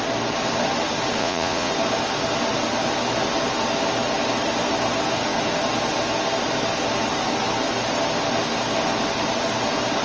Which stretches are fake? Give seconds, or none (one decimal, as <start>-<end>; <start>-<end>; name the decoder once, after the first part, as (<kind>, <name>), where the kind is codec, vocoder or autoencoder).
1.2-1.7 (vocoder, Vocos)